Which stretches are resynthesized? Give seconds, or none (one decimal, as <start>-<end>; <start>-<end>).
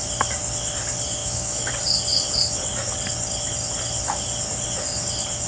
1.2-1.7